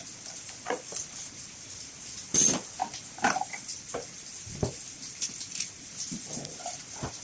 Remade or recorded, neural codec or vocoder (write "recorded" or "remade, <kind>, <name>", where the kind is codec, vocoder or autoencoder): recorded